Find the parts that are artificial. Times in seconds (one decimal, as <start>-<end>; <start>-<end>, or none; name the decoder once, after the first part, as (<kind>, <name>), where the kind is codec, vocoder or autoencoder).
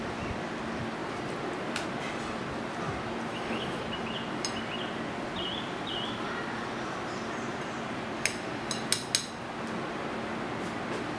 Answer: 3.3-3.8 (autoencoder, DAC-VAE)